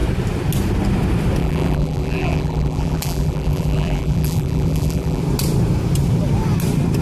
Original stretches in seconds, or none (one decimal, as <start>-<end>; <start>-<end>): 0.0-1.4; 5.2-7.0